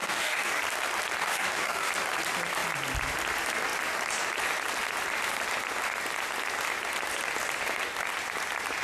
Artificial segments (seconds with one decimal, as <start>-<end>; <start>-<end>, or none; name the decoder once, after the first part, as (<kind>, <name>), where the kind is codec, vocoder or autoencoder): 0.0-0.6 (codec, DAC); 1.2-1.9